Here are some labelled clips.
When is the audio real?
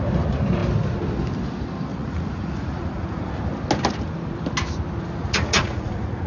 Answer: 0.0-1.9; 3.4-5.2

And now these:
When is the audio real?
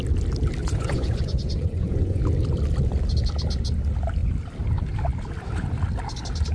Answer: 0.0-0.6; 2.2-6.5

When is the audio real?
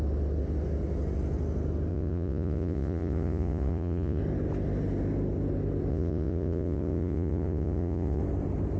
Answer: 0.0-1.9; 4.2-5.9; 8.2-8.8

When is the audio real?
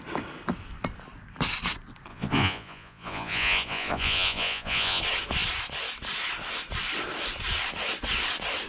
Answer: 0.0-2.1; 5.0-8.7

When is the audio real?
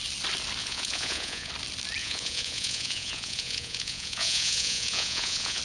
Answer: 0.0-0.6; 1.5-2.0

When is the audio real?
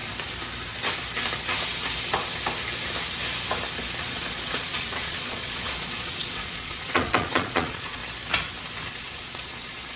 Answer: 0.0-4.0; 8.0-8.9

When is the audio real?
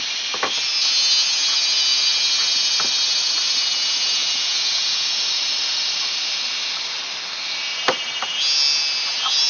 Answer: 0.0-4.2; 5.3-9.5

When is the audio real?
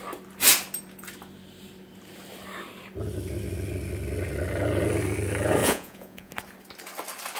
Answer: 0.0-5.6; 6.3-7.4